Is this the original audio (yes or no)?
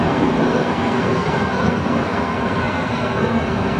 no